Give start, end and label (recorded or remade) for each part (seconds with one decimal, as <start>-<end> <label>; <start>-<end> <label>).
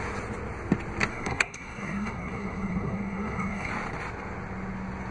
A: 0.0-1.1 recorded; 1.1-3.7 remade; 3.7-5.1 recorded